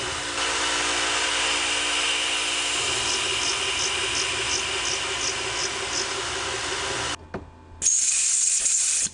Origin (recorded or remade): recorded